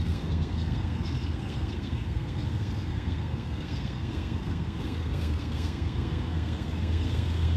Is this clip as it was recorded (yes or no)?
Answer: no